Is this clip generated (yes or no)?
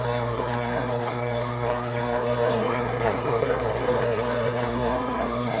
yes